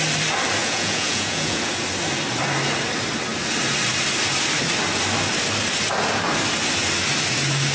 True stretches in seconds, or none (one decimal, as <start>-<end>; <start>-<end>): 0.0-0.6; 1.7-7.7